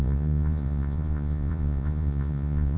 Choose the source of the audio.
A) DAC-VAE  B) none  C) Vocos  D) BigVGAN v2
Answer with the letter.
C